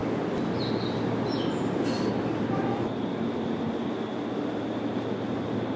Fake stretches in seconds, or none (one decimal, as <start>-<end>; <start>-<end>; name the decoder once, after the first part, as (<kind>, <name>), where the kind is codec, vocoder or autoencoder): none